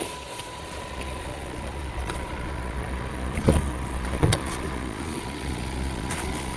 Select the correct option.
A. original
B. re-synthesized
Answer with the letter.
B